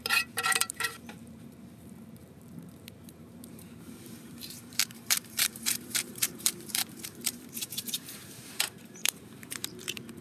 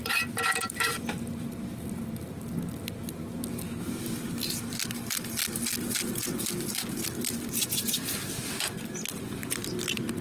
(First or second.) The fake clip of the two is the first